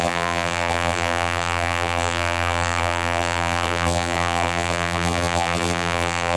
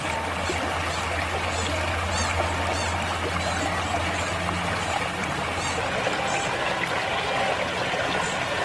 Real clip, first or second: second